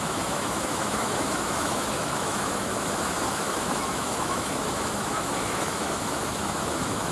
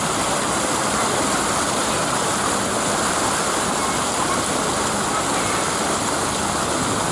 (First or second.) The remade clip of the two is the first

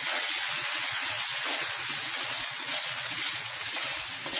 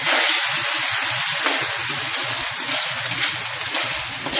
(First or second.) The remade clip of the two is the first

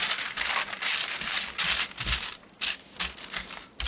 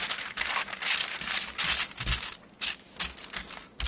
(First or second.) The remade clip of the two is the first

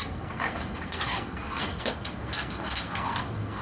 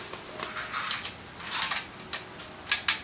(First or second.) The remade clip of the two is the first